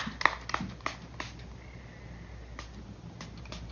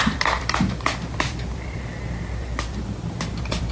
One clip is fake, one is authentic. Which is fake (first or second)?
second